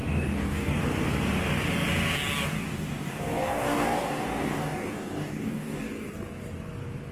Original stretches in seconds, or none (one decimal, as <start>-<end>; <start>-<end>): 0.8-2.5; 5.9-7.1